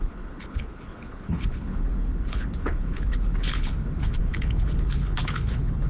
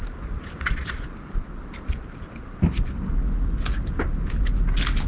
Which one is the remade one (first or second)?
first